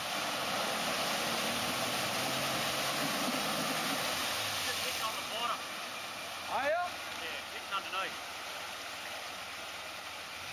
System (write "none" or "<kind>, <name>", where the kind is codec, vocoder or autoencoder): none